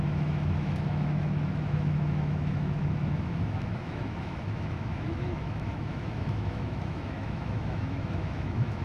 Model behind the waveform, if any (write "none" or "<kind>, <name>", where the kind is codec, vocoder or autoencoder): autoencoder, DAC-VAE